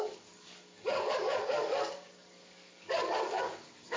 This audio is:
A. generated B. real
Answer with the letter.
A